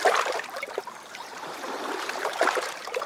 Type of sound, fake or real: fake